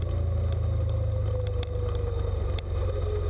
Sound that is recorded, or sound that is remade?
recorded